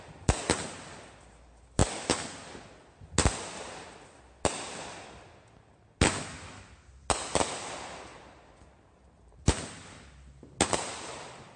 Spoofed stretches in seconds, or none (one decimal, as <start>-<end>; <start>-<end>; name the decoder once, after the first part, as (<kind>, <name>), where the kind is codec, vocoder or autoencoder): none